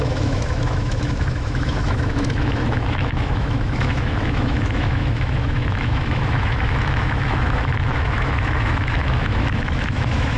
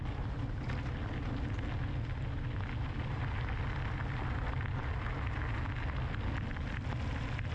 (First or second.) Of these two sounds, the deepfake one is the first